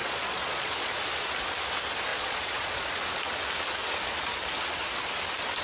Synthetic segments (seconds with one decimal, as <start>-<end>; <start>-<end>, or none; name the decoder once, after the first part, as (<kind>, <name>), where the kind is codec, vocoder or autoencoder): 0.0-1.0 (vocoder, Vocos); 2.1-2.9